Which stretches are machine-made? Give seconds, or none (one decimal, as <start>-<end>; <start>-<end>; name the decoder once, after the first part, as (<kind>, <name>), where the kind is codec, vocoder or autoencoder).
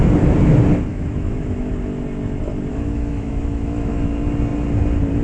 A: 0.9-1.7 (autoencoder, DAC-VAE); 2.7-3.9